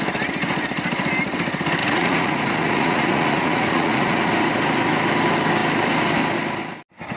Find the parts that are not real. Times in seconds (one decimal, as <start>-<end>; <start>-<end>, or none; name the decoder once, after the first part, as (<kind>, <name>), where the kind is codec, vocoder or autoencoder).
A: 1.8-4.3 (vocoder, Vocos)